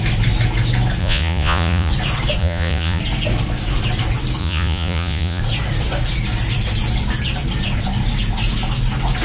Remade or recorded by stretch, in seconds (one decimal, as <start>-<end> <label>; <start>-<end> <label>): 0.0-1.0 recorded; 1.0-1.9 remade; 1.9-2.4 recorded; 2.4-3.0 remade; 3.0-4.4 recorded; 4.4-5.4 remade; 5.4-9.2 recorded